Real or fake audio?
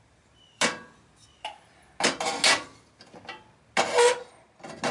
real